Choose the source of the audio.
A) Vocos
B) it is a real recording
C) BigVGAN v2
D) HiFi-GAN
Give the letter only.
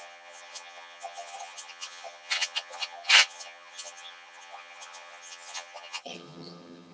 D